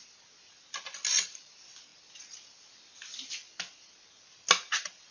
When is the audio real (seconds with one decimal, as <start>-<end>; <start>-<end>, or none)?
0.0-5.1